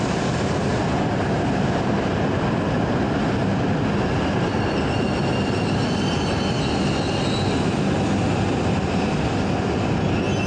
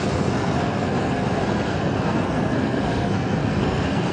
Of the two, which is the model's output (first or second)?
second